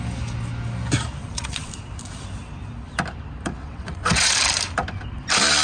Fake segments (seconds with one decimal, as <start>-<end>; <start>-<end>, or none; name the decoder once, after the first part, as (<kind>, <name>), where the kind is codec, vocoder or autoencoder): 1.2-1.7 (vocoder, WaveNeXt); 3.6-4.3